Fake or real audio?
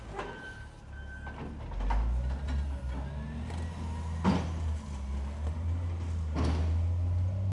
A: real